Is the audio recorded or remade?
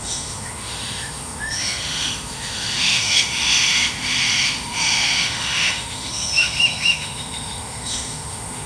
remade